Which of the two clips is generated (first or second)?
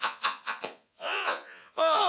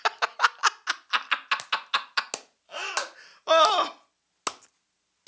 first